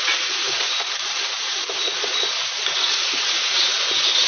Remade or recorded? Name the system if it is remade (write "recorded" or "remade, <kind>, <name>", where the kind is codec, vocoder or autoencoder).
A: remade, vocoder, Vocos